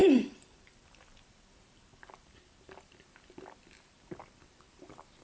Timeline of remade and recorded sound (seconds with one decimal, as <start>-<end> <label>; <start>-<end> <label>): 0.0-5.2 remade